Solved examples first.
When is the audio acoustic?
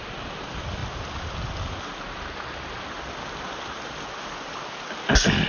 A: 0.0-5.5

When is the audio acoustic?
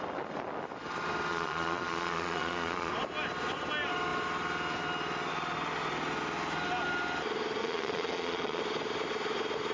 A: 0.0-1.3; 2.9-7.6; 8.6-9.7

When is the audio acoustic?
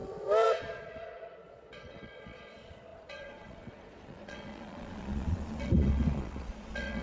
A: none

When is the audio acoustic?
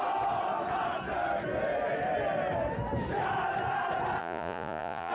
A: 0.0-4.2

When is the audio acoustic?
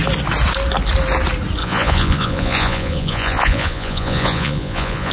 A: 0.0-1.6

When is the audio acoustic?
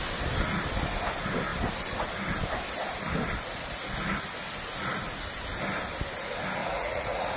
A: 0.0-6.6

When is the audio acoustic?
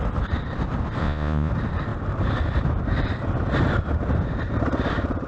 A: 0.0-1.0; 1.5-5.3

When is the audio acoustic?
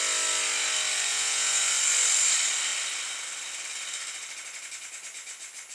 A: 0.0-1.1; 1.6-5.7